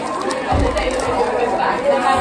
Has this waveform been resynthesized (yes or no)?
no